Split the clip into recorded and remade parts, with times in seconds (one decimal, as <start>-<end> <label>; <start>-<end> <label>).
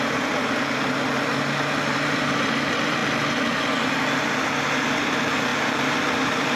0.0-1.3 remade; 1.3-1.9 recorded; 1.9-3.0 remade; 3.0-4.9 recorded; 4.9-6.6 remade